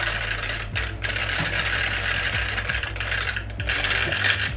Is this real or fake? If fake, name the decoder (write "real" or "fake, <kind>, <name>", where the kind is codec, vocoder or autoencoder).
fake, vocoder, BigVGAN v2